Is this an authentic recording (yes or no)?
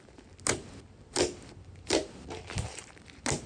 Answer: yes